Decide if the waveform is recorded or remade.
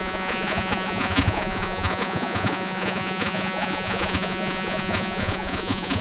remade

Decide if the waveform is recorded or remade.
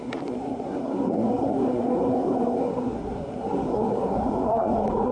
remade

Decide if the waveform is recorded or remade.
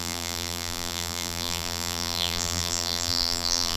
remade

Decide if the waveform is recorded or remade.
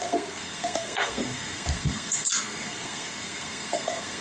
remade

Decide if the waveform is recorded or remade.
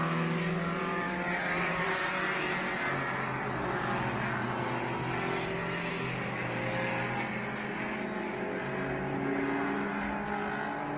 recorded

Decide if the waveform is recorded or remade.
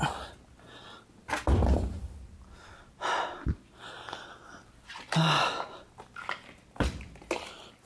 recorded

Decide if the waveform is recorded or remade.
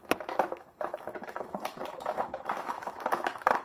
remade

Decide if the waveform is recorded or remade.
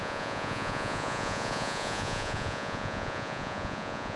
remade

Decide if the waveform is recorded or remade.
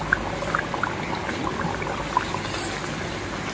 recorded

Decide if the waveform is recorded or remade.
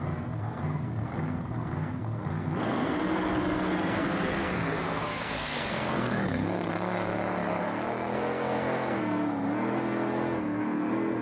remade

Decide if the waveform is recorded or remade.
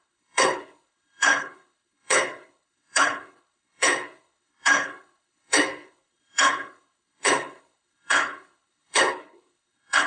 remade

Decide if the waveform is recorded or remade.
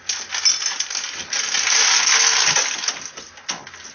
recorded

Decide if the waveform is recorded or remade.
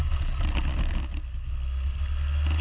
recorded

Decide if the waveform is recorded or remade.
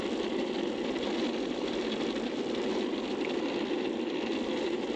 recorded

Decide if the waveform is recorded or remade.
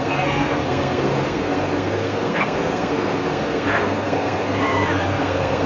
remade